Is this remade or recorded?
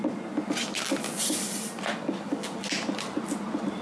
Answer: recorded